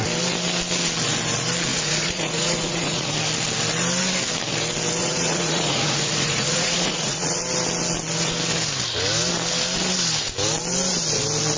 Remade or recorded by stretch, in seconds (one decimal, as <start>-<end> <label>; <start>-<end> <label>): 0.0-1.7 recorded; 1.7-3.1 remade; 3.1-5.0 recorded; 5.0-7.4 remade; 7.4-11.6 recorded